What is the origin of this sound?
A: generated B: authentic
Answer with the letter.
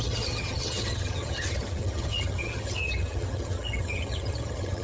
A